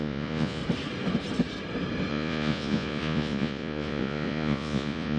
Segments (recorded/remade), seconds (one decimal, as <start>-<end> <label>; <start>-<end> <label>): 0.0-0.6 remade; 0.6-2.1 recorded; 2.1-5.2 remade